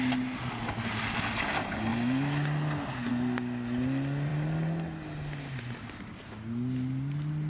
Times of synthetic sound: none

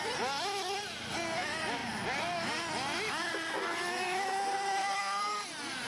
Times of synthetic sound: none

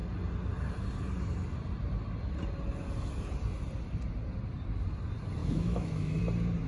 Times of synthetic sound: 5.4-6.2 (autoencoder, DAC-VAE)

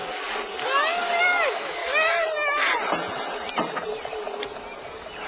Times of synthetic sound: 1.2-1.8 (autoencoder, DAC-VAE)

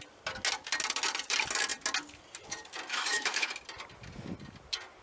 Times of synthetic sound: 2.9-3.5 (autoencoder, DAC-VAE)

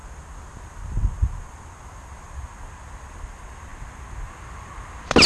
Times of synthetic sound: none